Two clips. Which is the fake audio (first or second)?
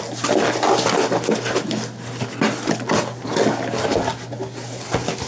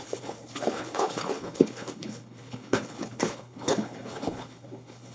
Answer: second